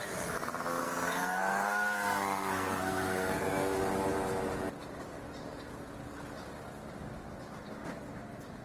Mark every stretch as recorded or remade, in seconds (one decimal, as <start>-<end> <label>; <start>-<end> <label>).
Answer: 0.0-0.8 recorded; 0.8-3.8 remade; 3.8-8.6 recorded